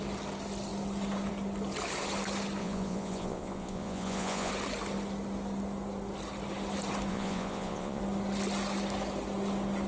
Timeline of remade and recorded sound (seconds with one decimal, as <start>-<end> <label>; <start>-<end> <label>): 0.0-2.6 recorded; 2.6-4.5 remade; 4.5-7.1 recorded; 7.1-8.0 remade; 8.0-9.9 recorded